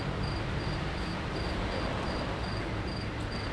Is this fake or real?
real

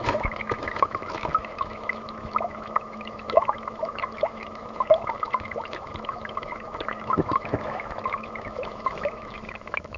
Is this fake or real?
fake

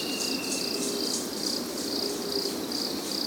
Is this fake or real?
real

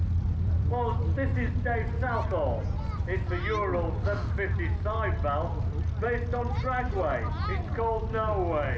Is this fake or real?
real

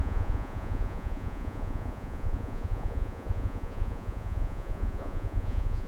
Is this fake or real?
fake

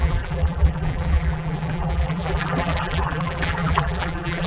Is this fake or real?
fake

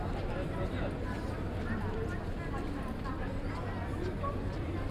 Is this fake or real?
fake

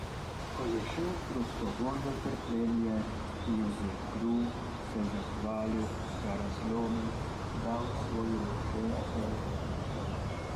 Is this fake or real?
real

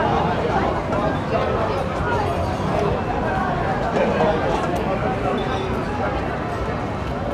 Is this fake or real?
real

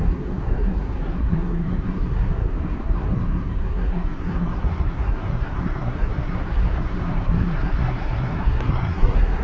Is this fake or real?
fake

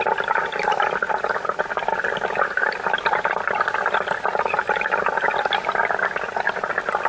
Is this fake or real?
real